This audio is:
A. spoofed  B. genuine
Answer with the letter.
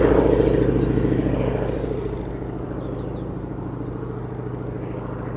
B